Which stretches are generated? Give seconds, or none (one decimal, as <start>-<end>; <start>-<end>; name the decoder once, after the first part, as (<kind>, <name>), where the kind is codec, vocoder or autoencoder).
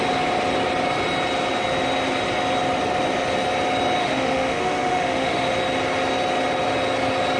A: 4.0-5.5 (autoencoder, DAC-VAE)